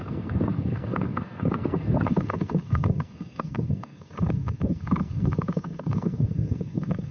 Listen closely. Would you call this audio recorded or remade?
remade